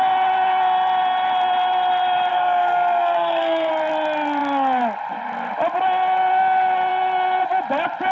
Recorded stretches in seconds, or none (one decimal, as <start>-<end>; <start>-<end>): 0.0-2.3; 3.7-8.1